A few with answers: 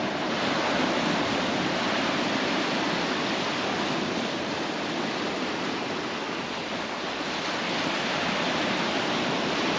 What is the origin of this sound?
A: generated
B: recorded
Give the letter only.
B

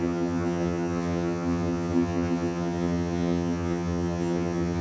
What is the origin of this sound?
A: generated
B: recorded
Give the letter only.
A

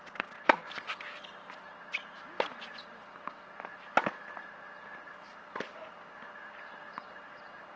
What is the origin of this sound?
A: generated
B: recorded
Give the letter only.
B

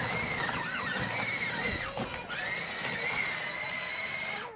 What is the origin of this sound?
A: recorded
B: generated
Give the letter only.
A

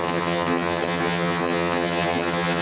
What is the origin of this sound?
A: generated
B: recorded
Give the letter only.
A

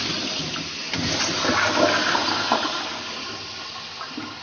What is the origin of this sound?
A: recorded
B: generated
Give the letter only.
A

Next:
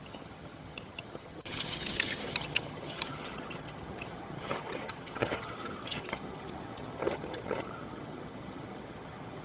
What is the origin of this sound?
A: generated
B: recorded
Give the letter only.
A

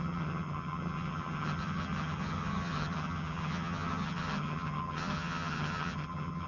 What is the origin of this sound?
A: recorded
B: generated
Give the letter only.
B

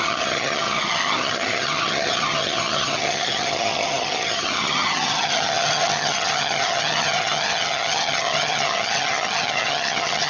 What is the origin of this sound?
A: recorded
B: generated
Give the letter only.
B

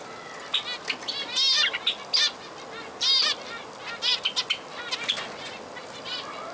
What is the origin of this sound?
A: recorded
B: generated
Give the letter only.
A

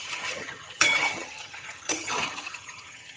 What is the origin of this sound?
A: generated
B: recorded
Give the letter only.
A